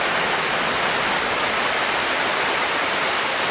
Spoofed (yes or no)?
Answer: no